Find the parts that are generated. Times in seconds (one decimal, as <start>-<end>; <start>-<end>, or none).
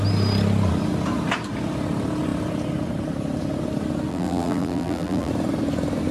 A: 4.1-5.3